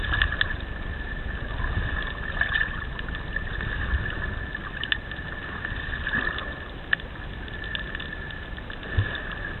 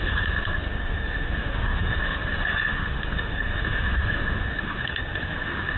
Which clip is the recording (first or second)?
first